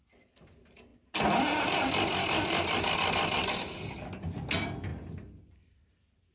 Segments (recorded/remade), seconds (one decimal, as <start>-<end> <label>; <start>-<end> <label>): 0.0-6.3 recorded